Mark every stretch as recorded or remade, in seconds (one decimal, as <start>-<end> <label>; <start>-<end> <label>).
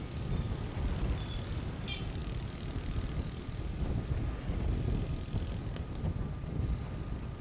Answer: 0.0-7.4 recorded